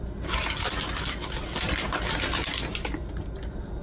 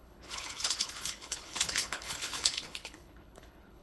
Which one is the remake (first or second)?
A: second